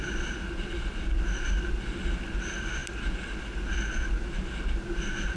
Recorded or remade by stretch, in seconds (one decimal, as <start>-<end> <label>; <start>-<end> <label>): 0.0-5.4 recorded